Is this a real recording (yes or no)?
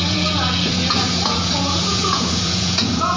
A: no